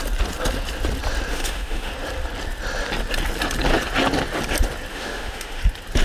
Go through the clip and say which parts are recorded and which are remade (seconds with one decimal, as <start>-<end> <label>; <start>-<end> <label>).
0.0-1.3 recorded; 1.3-1.9 remade; 1.9-4.9 recorded; 4.9-5.6 remade; 5.6-6.0 recorded